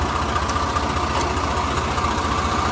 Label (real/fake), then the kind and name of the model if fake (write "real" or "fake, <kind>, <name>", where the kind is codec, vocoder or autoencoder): real